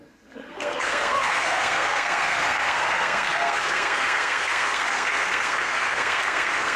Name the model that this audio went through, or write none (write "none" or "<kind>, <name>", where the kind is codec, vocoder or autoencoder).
codec, SNAC